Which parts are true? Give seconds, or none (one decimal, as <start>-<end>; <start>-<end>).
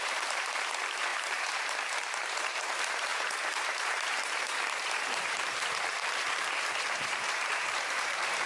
none